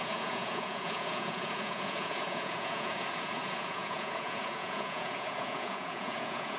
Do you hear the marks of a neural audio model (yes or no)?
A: yes